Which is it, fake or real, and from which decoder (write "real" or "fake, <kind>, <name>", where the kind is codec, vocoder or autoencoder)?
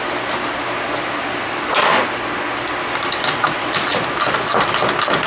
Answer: real